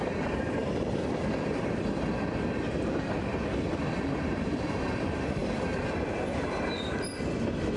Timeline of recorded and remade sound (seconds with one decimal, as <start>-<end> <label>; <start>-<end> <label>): 0.0-5.4 remade; 5.4-7.8 recorded